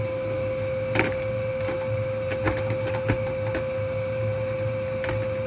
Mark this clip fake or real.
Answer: real